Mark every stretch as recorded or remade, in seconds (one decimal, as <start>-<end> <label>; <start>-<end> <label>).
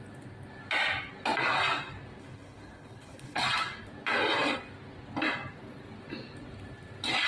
0.0-2.2 recorded; 2.2-3.4 remade; 3.4-7.3 recorded